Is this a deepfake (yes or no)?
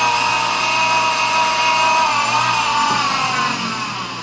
no